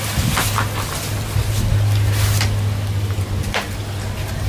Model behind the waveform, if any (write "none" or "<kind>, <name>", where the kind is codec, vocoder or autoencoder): none